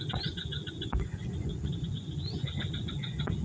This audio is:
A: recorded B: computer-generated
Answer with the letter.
B